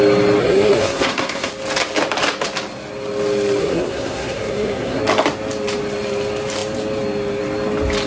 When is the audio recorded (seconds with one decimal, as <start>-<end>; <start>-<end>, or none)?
0.0-0.4; 1.5-3.6; 5.0-8.1